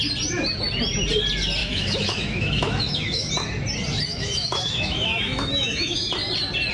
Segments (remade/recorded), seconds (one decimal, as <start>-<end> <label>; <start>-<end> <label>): 0.0-1.6 recorded; 1.6-3.3 remade; 3.3-4.1 recorded; 4.1-6.1 remade; 6.1-6.7 recorded